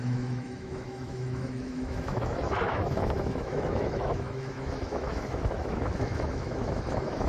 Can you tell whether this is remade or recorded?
remade